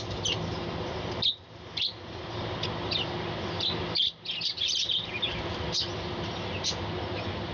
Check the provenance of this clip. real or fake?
real